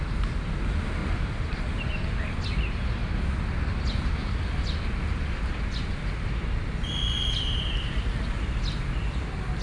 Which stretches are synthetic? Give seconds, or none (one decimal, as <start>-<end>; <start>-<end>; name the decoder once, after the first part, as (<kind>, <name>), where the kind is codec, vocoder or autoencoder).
1.0-1.9 (vocoder, BigVGAN v2)